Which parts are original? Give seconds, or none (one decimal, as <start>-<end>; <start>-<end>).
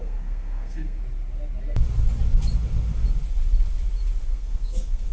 1.0-4.3